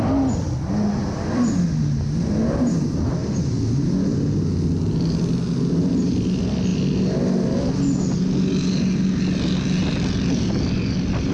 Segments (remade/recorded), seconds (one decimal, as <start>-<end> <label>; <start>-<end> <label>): 0.0-1.0 recorded; 1.0-1.6 remade; 1.6-11.3 recorded